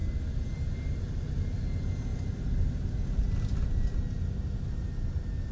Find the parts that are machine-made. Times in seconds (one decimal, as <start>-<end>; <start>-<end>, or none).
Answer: none